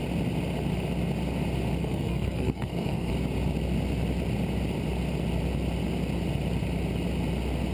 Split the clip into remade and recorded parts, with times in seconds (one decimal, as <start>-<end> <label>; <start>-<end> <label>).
0.0-1.8 recorded; 1.8-3.1 remade; 3.1-7.7 recorded